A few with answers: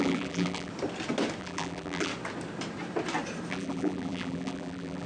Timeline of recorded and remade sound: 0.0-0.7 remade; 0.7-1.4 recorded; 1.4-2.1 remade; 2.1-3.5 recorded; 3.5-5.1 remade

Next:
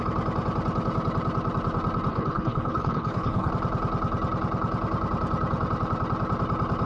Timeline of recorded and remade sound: 0.0-2.1 recorded; 2.1-3.5 remade; 3.5-6.9 recorded

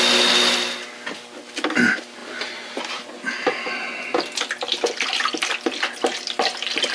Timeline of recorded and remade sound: 0.0-6.9 recorded

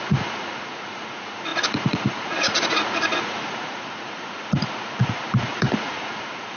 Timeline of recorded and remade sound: 0.0-6.6 remade

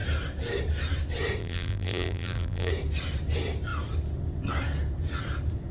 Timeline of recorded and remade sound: 0.0-1.4 recorded; 1.4-2.7 remade; 2.7-5.7 recorded

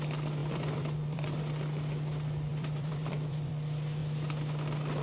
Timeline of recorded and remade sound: 0.0-0.4 recorded; 0.4-1.4 remade; 1.4-2.5 recorded; 2.5-3.5 remade; 3.5-5.0 recorded

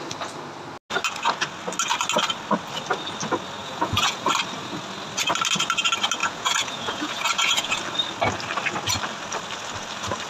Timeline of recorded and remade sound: 0.0-3.6 recorded; 3.6-4.3 remade; 4.3-6.2 recorded; 6.2-7.8 remade; 7.8-10.3 recorded